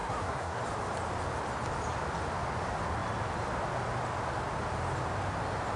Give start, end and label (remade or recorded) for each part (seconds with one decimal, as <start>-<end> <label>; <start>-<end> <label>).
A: 0.0-0.6 remade; 0.6-5.8 recorded